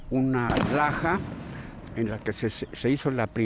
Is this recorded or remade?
remade